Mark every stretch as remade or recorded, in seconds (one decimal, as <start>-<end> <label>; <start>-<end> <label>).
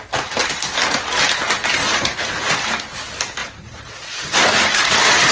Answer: 0.0-1.8 recorded; 1.8-2.5 remade; 2.5-3.4 recorded; 3.4-5.3 remade